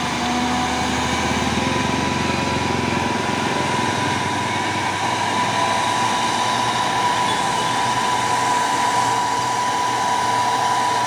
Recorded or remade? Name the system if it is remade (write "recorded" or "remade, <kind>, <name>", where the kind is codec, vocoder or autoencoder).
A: recorded